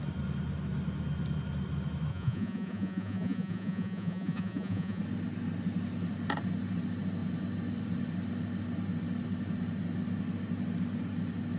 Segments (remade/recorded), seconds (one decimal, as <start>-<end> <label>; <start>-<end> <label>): 0.0-2.1 recorded; 2.1-5.0 remade; 5.0-11.6 recorded